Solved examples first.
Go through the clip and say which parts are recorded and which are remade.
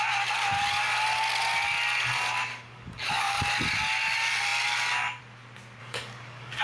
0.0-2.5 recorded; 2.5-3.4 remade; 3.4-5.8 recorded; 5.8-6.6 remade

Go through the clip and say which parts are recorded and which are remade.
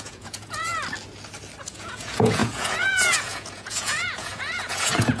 0.0-0.7 remade; 0.7-1.6 recorded; 1.6-5.2 remade